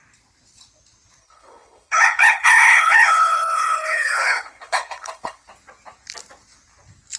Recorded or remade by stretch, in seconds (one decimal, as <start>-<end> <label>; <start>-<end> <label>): 0.0-1.2 recorded; 1.2-5.5 remade; 5.5-7.2 recorded